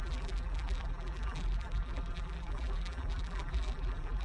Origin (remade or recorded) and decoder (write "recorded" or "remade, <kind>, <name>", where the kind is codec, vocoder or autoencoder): remade, vocoder, BigVGAN v2